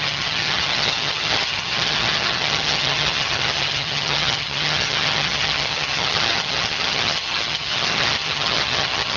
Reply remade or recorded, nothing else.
remade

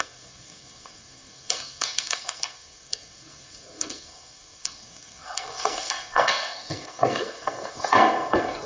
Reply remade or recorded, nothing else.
remade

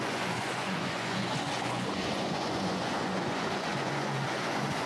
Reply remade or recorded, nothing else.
remade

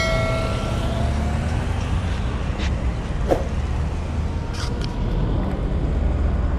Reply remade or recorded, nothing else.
recorded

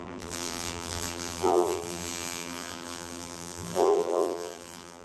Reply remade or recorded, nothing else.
remade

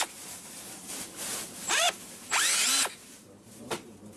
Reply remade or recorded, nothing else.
remade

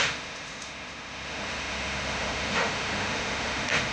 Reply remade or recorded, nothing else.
remade